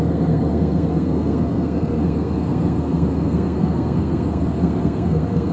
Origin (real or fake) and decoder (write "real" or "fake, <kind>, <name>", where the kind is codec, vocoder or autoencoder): fake, codec, SNAC